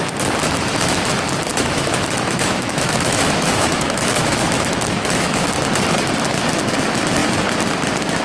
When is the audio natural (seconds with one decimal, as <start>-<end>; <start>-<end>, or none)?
0.0-1.5; 5.5-8.2